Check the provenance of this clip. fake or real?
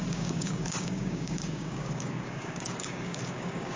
fake